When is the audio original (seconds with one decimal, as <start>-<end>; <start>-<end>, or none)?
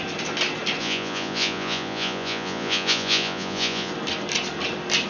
0.0-0.8; 3.9-5.1